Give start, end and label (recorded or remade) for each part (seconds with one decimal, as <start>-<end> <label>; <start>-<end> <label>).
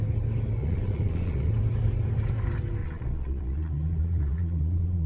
0.0-0.6 recorded; 0.6-1.5 remade; 1.5-2.8 recorded; 2.8-5.1 remade